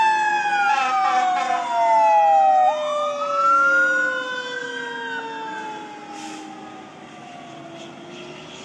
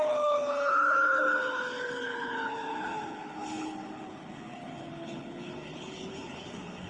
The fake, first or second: second